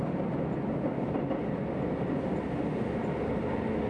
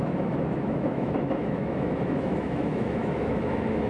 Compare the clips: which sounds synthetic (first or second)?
second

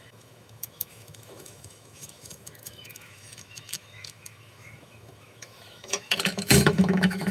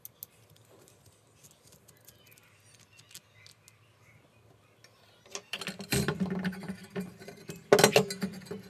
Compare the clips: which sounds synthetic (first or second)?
first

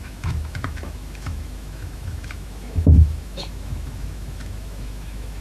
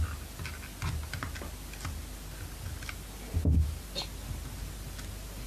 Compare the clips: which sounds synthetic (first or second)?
first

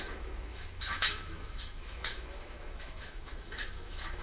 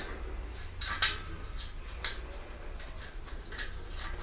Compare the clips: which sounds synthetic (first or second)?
first